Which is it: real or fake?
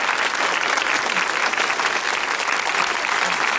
real